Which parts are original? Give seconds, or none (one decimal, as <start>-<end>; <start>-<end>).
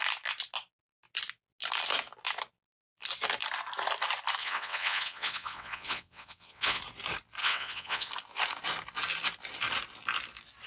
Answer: 0.0-4.4; 6.8-7.4; 8.1-10.7